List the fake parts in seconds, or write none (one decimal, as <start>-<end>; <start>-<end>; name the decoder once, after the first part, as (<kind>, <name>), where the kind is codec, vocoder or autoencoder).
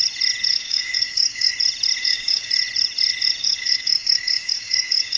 0.5-1.5 (codec, DAC); 2.0-2.5; 3.4-5.2